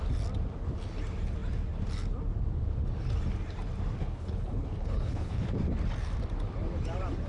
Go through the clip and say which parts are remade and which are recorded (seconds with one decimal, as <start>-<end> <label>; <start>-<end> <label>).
0.0-4.0 recorded; 4.0-5.5 remade; 5.5-7.3 recorded